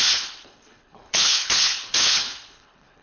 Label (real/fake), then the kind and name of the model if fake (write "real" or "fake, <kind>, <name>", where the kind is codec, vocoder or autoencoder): fake, codec, HILCodec